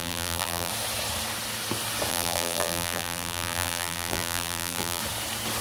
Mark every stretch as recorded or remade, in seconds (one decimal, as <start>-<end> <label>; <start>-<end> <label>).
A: 0.0-0.7 remade; 0.7-2.1 recorded; 2.1-5.0 remade; 5.0-5.6 recorded